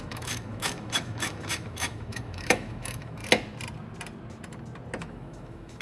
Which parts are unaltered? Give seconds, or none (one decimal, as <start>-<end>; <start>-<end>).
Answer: 3.2-5.0

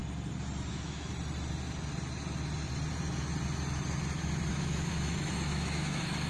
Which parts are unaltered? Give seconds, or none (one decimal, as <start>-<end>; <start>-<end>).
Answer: 0.0-0.7; 1.1-4.5

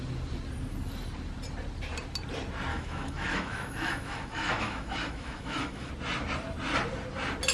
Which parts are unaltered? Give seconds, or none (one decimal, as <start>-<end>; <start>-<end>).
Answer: 0.0-2.7; 5.9-7.5

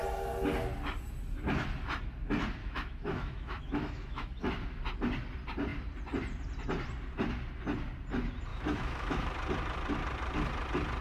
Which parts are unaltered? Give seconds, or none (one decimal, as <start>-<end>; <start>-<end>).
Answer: 0.0-2.6; 4.5-8.5; 9.3-11.0